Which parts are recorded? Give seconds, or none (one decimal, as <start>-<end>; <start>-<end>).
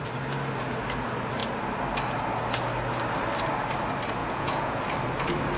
0.0-4.2; 4.8-5.6